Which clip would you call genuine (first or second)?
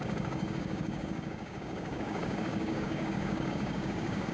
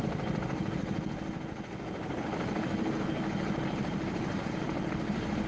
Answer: second